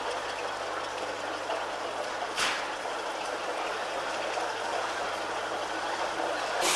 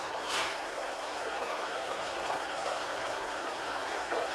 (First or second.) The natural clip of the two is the first